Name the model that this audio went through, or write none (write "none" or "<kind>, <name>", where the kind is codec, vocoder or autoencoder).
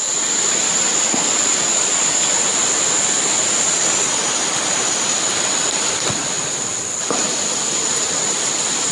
none